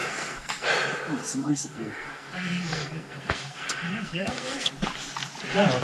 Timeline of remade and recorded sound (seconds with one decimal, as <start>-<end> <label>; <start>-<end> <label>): 0.0-0.7 remade; 0.7-1.2 recorded; 1.2-4.7 remade; 4.7-5.8 recorded